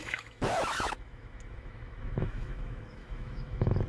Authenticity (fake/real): fake